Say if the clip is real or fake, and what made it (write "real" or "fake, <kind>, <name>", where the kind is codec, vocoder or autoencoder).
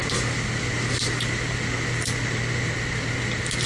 real